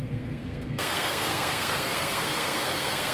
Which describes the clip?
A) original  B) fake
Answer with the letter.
B